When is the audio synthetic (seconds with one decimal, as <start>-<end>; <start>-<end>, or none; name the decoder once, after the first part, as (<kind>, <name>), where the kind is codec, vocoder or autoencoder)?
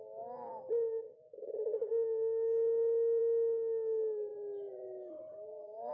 0.5-1.1 (vocoder, BigVGAN v2); 4.3-5.9